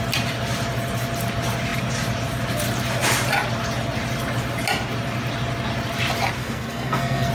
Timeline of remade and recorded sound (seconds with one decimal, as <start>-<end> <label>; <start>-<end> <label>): 0.0-6.4 recorded; 6.4-7.3 remade